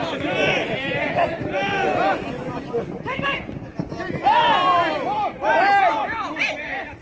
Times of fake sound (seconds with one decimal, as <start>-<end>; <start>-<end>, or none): none